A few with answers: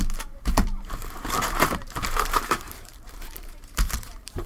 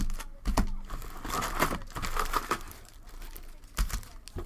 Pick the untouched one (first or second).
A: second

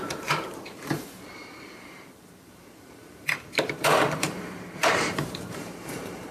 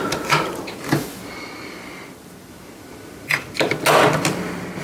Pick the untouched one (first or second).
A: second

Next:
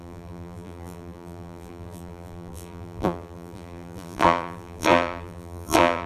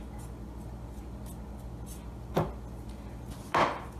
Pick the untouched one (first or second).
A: second